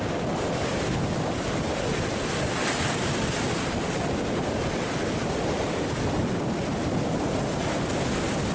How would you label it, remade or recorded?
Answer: recorded